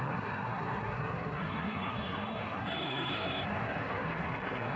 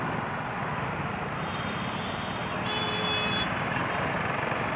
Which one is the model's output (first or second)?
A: first